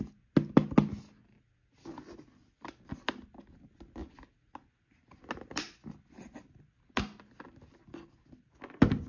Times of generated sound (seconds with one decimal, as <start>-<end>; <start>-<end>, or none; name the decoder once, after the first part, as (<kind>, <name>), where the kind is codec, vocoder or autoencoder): none